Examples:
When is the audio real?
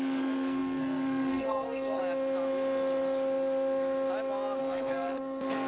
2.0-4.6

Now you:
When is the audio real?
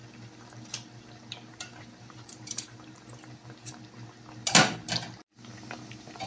0.0-1.5; 3.7-6.3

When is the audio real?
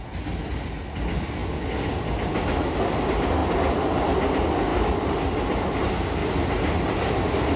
0.0-7.6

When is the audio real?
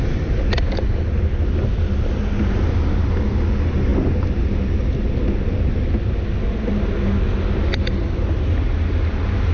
0.0-9.5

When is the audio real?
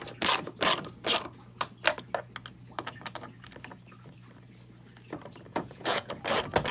0.0-5.5; 6.1-6.7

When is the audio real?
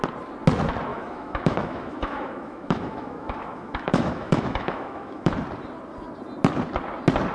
0.0-0.9; 5.3-7.3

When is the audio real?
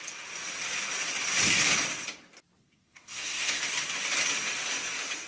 0.0-2.6; 3.6-5.3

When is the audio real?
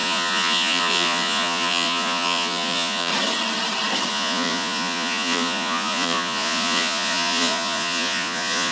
3.1-4.1